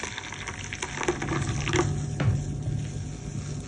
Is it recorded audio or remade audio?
recorded